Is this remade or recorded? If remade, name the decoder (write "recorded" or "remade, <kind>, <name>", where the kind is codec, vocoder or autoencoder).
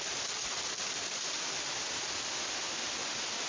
recorded